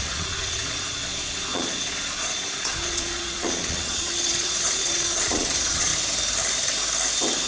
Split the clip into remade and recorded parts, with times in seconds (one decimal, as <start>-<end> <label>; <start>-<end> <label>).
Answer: 0.0-5.9 remade; 5.9-7.5 recorded